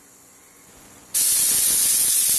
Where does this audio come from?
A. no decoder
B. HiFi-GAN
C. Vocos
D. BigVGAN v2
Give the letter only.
C